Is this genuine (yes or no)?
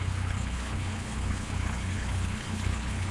no